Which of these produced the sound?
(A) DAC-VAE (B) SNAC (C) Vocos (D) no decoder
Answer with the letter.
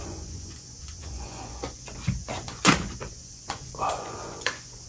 C